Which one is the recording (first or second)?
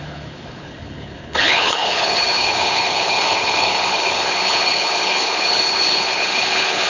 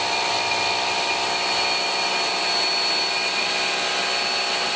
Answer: second